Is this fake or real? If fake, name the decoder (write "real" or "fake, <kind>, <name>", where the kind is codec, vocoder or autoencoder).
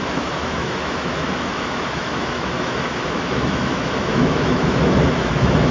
fake, autoencoder, DAC-VAE